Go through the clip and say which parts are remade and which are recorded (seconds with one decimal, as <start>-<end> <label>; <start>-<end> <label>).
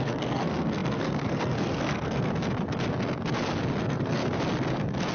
0.0-2.3 remade; 2.3-3.8 recorded; 3.8-4.2 remade; 4.2-5.1 recorded